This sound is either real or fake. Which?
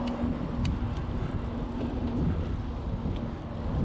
real